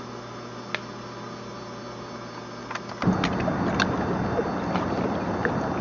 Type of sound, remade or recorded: recorded